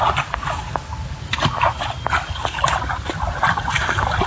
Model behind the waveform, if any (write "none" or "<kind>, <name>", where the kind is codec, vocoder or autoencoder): none